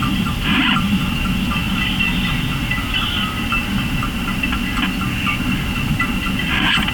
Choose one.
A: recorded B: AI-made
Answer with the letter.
A